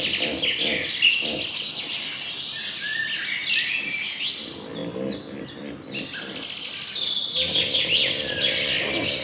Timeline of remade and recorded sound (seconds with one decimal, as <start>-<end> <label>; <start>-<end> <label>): 0.0-9.2 recorded

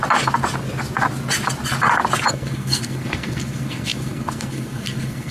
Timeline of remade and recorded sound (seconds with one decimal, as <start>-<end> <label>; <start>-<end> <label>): 0.0-2.3 recorded; 2.3-5.3 remade